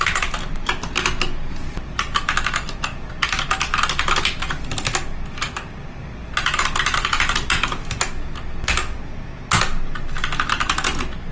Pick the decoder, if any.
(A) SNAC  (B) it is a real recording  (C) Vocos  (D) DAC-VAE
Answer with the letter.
B